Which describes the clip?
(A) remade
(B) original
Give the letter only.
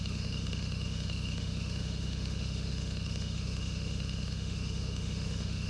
A